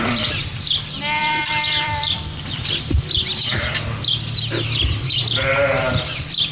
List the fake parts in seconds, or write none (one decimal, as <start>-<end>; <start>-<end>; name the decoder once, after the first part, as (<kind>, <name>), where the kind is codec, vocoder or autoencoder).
0.0-0.5 (vocoder, BigVGAN v2); 1.2-3.3; 4.8-5.2; 5.8-6.5